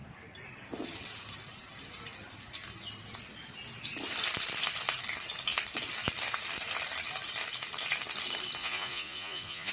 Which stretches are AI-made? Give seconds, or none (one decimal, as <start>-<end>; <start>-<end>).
8.6-9.7